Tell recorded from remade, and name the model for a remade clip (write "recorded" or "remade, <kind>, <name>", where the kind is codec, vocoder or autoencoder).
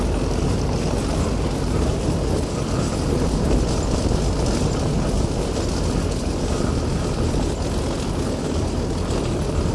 recorded